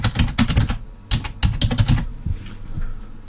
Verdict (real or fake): real